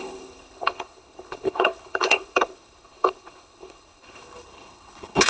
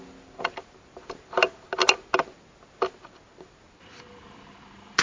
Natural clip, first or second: second